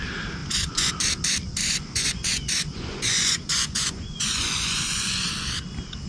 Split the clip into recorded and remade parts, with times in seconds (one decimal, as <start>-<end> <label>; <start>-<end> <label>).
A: 0.0-0.4 recorded; 0.4-0.9 remade; 0.9-1.6 recorded; 1.6-5.3 remade; 5.3-6.1 recorded